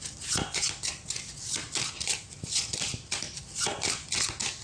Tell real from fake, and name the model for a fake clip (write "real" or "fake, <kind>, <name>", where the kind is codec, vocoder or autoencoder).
real